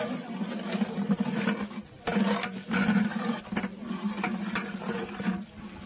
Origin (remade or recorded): recorded